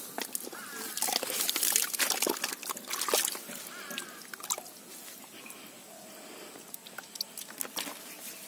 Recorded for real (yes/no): yes